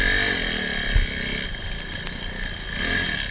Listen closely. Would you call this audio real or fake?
real